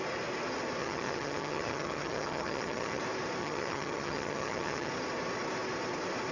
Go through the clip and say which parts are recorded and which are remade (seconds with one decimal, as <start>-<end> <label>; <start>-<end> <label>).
0.0-0.8 recorded; 0.8-3.0 remade; 3.0-3.4 recorded; 3.4-4.9 remade; 4.9-6.3 recorded